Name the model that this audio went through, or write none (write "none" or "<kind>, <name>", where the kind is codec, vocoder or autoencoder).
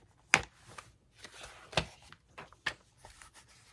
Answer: none